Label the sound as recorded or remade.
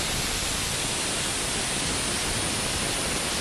recorded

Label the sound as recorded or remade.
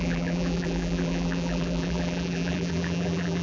remade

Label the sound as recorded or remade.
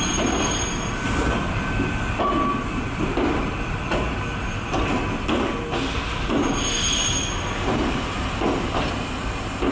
recorded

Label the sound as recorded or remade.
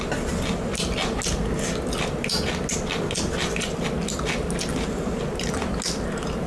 recorded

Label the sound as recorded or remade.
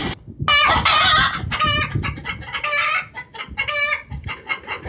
recorded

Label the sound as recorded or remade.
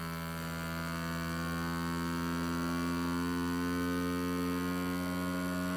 recorded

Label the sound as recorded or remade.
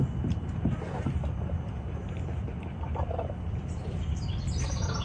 remade